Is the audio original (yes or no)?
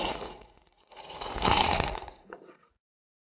no